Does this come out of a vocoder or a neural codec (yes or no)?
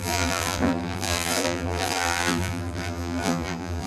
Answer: yes